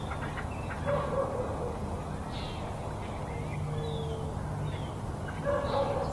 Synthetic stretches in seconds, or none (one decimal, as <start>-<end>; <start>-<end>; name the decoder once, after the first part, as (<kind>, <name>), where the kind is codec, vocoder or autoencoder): none

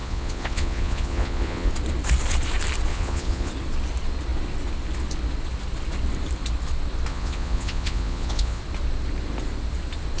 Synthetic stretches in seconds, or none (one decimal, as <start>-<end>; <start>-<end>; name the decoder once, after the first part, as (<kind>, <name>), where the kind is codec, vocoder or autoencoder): 0.0-1.7 (vocoder, Vocos); 2.9-3.5; 7.1-8.6

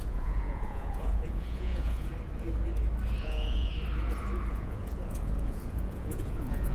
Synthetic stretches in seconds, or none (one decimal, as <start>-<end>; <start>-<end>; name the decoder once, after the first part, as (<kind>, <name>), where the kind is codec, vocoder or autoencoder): 0.0-2.1 (vocoder, Vocos); 3.2-3.7; 4.5-6.7

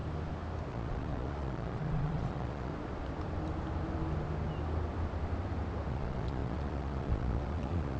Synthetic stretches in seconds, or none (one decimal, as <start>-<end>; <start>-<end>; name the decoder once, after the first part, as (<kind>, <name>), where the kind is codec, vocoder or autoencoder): 0.7-2.7 (vocoder, Vocos); 5.9-8.0

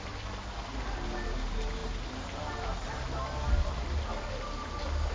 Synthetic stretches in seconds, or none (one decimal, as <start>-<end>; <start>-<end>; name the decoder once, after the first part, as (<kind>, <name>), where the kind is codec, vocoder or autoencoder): none